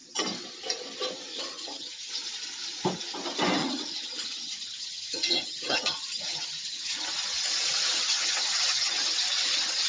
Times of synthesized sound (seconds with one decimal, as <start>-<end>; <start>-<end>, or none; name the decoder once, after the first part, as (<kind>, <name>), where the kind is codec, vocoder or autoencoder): 1.3-2.1 (vocoder, HiFi-GAN); 3.6-7.1; 8.0-8.9